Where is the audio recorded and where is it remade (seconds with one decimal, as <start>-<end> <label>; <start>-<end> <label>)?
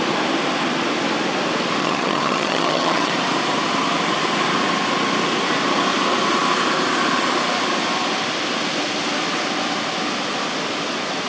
0.0-1.8 recorded; 1.8-3.1 remade; 3.1-11.3 recorded